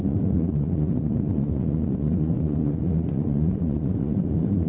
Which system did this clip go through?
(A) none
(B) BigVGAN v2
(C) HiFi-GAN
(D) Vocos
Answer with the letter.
D